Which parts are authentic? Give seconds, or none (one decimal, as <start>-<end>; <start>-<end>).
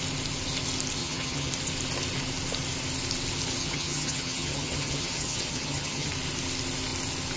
0.0-1.0; 1.5-3.6; 6.1-7.4